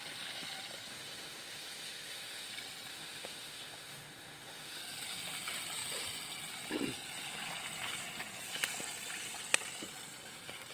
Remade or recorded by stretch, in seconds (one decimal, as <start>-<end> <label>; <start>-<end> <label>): 0.0-0.9 recorded; 0.9-2.5 remade; 2.5-2.9 recorded; 2.9-4.8 remade; 4.8-10.7 recorded